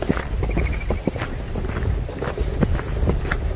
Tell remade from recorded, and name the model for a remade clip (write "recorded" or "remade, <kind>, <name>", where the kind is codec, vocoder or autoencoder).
recorded